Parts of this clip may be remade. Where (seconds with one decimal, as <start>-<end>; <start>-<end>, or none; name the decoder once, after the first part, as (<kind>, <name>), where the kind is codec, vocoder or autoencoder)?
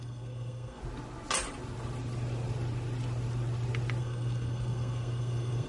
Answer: 0.0-0.8 (codec, SNAC); 4.0-5.7